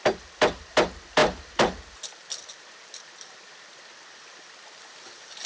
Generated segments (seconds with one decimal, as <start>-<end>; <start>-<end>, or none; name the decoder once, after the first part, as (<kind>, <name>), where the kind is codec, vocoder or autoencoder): none